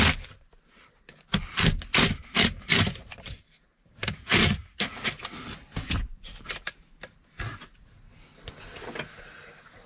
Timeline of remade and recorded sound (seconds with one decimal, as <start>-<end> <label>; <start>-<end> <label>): 0.0-1.9 recorded; 1.9-6.8 remade; 6.8-9.9 recorded